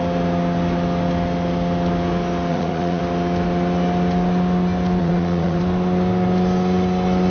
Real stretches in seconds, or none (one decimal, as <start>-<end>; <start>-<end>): 0.0-2.5; 3.0-5.0; 5.6-7.3